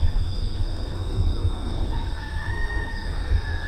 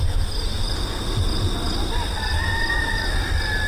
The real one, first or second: second